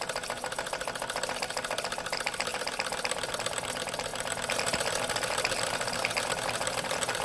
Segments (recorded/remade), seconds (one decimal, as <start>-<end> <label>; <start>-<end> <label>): 0.0-7.2 recorded